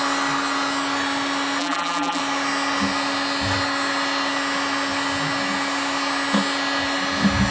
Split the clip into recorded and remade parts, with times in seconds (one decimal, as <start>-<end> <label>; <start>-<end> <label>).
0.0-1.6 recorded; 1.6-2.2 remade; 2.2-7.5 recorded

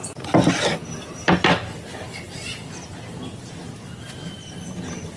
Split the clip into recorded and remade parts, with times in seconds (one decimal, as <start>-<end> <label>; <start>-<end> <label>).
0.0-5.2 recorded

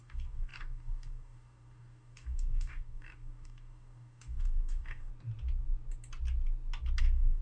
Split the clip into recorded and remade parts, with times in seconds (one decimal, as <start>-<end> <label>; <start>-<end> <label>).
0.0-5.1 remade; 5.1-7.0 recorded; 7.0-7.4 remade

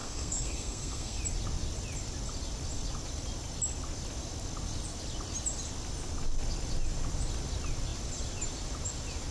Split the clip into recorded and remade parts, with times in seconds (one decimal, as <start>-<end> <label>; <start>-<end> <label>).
0.0-1.2 remade; 1.2-9.3 recorded

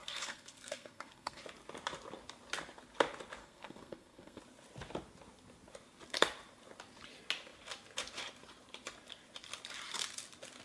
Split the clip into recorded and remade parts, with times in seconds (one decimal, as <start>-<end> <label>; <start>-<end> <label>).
0.0-1.4 remade; 1.4-3.4 recorded; 3.4-4.4 remade; 4.4-10.6 recorded